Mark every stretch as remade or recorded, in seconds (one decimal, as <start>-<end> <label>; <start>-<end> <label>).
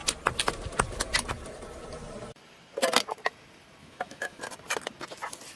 0.0-3.8 recorded; 3.8-4.4 remade; 4.4-5.6 recorded